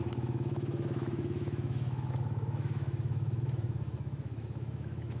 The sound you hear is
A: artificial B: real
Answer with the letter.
A